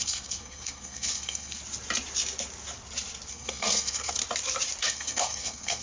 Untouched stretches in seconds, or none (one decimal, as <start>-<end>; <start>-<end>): 1.6-3.3; 4.2-4.8